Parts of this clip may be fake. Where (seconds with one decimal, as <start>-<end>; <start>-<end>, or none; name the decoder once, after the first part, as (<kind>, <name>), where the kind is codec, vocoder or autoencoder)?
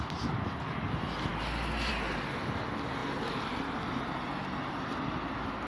none